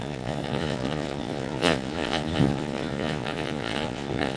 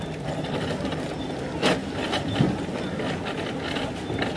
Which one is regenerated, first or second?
first